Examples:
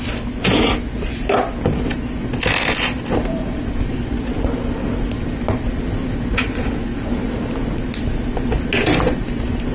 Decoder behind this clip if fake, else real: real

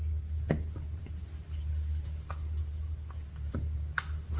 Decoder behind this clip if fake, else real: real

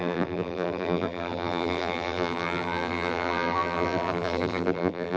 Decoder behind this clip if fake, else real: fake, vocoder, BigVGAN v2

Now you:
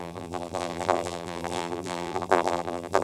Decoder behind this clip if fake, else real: fake, vocoder, BigVGAN v2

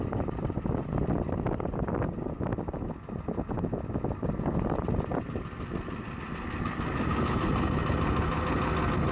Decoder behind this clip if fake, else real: real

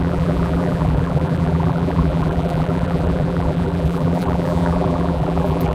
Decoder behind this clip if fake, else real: fake, vocoder, BigVGAN v2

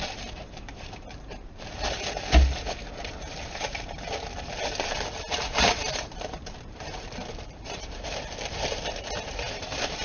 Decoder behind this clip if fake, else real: fake, vocoder, BigVGAN v2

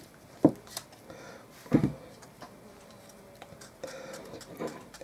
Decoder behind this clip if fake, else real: real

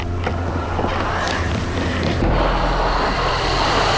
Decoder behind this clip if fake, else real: fake, vocoder, BigVGAN v2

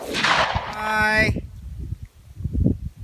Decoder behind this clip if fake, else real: real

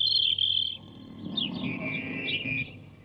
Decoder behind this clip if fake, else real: real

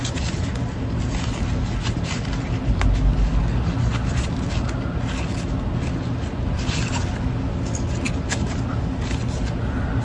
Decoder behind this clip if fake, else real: real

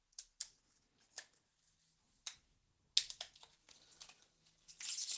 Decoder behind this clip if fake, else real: real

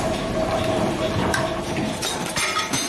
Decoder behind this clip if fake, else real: fake, vocoder, BigVGAN v2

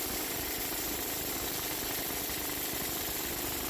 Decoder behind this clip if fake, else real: real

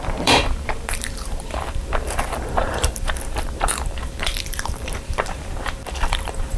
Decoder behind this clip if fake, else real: fake, vocoder, BigVGAN v2